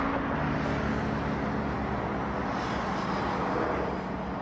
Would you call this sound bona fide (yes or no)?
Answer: yes